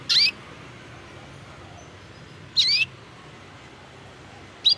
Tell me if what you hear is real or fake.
real